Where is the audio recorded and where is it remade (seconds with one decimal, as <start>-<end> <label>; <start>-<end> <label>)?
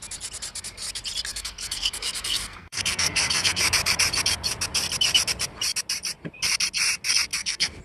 0.0-1.3 recorded; 1.3-3.6 remade; 3.6-7.3 recorded; 7.3-7.8 remade